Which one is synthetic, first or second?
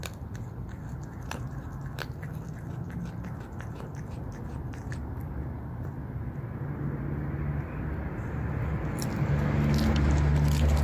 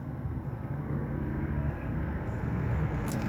second